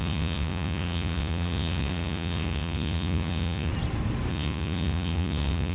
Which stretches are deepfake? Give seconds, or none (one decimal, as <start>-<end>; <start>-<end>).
0.0-3.7; 4.3-5.7

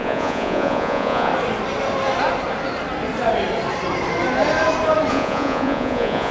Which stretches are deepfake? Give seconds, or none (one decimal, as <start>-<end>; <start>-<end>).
0.0-1.3; 5.1-6.3